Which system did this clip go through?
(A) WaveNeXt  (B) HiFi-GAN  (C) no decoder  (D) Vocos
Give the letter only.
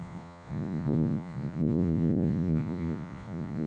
D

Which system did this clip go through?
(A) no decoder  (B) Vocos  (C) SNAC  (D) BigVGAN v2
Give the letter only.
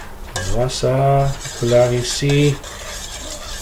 A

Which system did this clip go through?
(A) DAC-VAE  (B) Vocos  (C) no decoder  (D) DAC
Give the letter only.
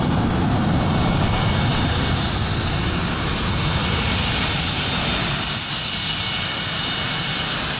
C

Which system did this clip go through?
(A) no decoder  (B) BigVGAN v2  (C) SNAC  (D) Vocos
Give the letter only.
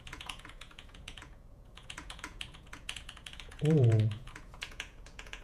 D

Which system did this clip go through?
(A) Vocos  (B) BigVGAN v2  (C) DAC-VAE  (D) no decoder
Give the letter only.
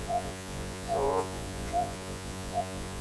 A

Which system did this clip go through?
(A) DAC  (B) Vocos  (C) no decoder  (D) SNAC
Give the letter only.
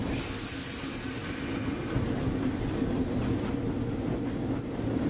C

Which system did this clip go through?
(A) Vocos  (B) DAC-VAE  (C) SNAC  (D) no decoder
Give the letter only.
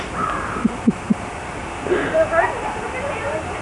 D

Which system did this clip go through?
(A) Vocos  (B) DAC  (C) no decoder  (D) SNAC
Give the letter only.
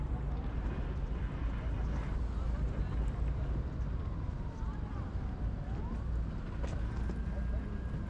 C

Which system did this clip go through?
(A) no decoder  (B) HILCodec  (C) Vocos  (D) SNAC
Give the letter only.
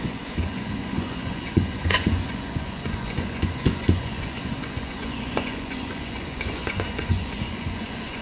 C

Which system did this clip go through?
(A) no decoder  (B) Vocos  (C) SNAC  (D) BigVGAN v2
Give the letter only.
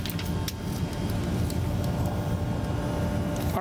A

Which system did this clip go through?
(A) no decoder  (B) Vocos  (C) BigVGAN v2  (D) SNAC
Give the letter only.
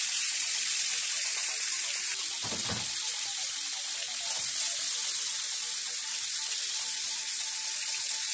A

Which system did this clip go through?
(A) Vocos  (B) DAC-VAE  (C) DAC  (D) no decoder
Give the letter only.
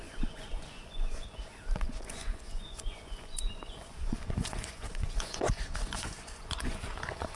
A